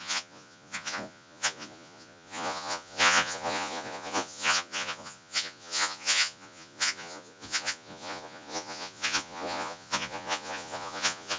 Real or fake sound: fake